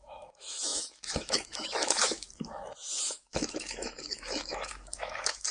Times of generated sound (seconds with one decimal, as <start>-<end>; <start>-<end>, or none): 0.0-5.5